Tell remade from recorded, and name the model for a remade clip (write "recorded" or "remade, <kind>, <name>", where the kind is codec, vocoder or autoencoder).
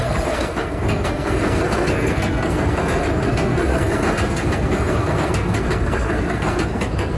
remade, codec, SNAC